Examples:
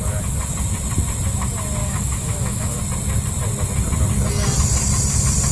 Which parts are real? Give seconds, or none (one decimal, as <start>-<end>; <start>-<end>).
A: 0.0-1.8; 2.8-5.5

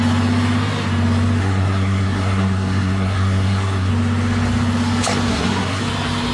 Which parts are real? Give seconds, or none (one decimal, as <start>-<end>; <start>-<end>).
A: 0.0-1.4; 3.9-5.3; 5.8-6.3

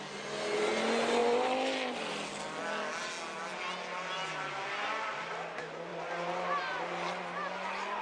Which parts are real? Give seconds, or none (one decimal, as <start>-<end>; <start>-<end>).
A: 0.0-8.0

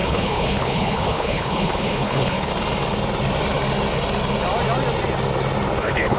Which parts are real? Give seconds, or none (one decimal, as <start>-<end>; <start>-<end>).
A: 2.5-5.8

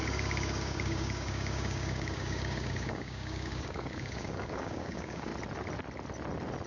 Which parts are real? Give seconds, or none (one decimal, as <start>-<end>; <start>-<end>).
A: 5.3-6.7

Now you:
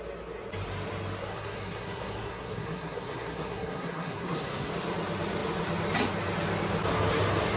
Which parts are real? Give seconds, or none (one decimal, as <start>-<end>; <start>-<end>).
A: 0.0-1.2; 4.7-7.6